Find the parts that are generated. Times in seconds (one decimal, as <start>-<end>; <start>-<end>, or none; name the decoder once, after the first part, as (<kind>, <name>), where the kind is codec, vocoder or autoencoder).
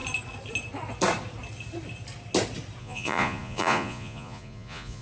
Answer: 2.8-5.0 (vocoder, Vocos)